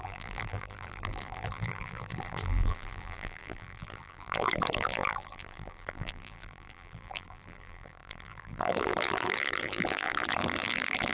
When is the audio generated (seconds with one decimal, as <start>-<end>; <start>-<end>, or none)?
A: 0.0-11.1